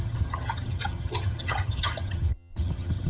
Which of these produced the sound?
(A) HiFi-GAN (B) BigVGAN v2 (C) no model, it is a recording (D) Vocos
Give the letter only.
A